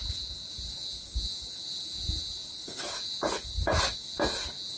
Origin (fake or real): real